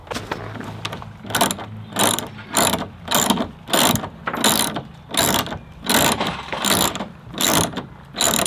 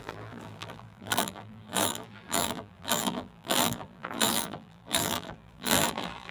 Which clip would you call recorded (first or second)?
first